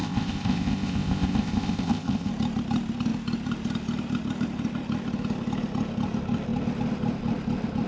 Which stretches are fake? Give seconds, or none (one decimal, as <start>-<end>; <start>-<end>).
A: 0.0-2.3